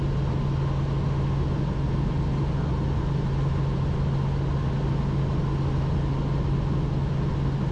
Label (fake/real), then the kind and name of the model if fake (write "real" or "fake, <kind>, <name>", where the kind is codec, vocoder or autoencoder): real